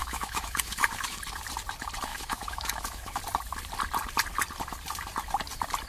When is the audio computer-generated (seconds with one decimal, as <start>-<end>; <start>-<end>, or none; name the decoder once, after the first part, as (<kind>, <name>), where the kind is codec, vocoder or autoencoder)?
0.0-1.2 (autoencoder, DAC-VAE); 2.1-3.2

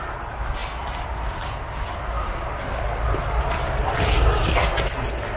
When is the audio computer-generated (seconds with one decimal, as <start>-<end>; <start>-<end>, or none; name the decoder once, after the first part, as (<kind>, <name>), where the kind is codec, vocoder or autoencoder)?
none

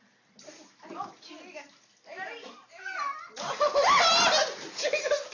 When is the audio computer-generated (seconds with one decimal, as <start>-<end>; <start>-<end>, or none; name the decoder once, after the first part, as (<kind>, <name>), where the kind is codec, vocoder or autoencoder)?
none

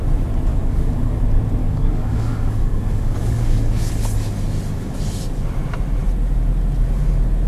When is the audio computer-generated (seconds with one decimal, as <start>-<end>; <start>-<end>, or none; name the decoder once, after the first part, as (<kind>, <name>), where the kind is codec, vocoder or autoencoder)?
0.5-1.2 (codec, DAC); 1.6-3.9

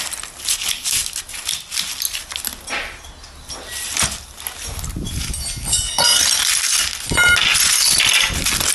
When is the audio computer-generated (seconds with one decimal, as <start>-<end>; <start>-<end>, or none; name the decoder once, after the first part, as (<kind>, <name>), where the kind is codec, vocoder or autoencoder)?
5.7-6.2 (codec, SNAC)

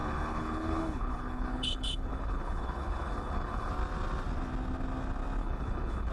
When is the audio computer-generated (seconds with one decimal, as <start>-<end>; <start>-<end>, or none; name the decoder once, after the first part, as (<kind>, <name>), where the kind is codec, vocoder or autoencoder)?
0.0-3.7 (codec, HILCodec); 5.4-6.1

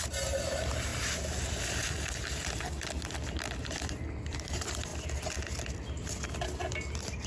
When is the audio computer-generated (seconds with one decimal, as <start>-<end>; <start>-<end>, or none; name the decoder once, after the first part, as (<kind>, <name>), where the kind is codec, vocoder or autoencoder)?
none